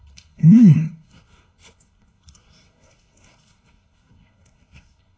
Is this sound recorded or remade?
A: remade